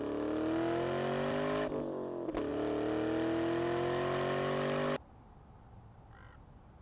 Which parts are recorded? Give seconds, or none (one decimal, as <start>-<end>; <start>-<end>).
0.0-6.8